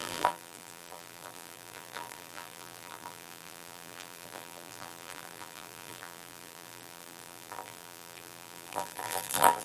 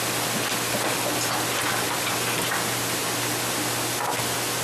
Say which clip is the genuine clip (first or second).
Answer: second